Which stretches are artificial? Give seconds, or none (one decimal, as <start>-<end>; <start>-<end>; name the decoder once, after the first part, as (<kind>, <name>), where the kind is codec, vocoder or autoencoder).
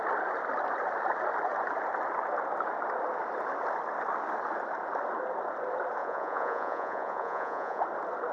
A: 6.0-7.8 (vocoder, Vocos)